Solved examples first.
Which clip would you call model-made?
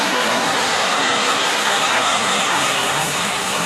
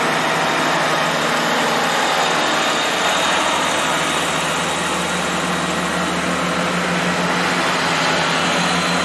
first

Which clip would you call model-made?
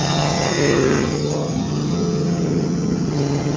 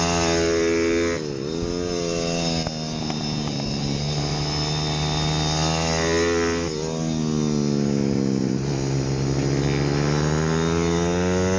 first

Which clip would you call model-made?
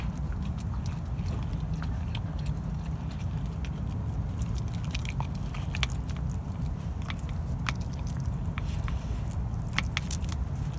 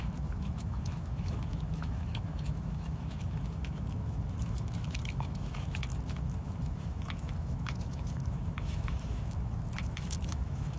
second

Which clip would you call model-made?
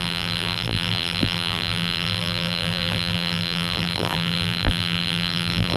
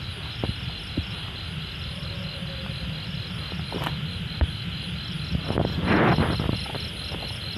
first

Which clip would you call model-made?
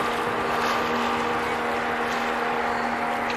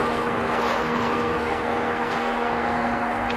second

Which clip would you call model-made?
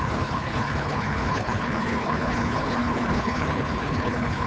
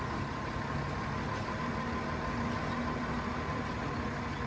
first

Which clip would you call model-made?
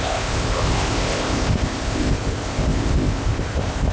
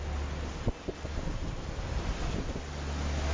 first